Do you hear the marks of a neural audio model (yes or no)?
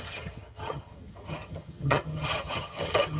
yes